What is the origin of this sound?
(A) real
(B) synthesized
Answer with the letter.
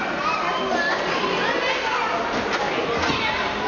A